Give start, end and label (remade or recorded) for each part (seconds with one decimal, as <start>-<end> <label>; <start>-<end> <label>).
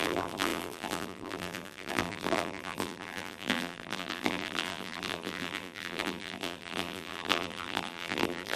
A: 0.0-8.6 remade